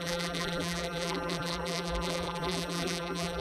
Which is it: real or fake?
fake